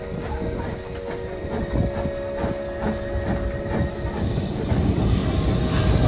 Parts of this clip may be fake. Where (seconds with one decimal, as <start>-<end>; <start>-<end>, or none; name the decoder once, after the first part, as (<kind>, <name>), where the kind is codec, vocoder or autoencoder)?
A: 0.0-0.7 (vocoder, BigVGAN v2); 4.4-5.2